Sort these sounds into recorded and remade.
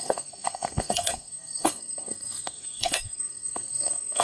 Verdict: remade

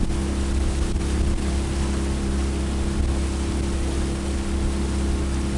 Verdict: recorded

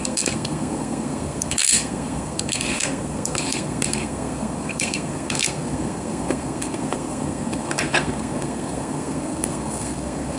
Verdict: remade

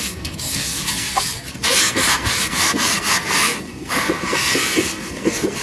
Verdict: remade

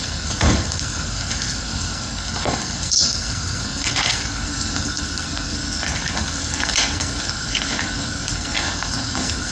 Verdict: remade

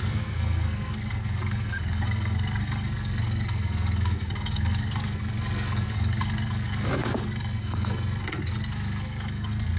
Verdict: remade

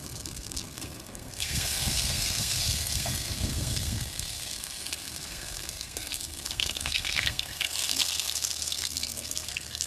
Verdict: remade